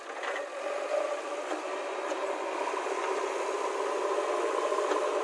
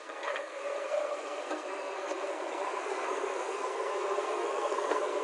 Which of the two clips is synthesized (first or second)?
second